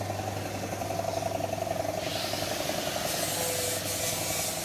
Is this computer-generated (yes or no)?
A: no